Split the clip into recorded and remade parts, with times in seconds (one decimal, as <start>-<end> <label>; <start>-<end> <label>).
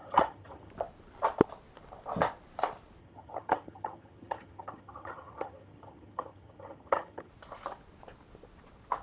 0.0-0.7 remade; 0.7-3.0 recorded; 3.0-7.3 remade; 7.3-9.0 recorded